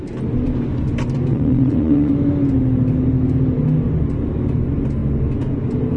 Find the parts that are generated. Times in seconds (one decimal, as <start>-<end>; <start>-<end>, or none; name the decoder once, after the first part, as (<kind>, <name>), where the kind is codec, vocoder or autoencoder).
1.3-2.1 (vocoder, Vocos)